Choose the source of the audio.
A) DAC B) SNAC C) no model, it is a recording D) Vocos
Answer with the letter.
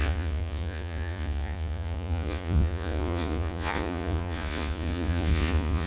D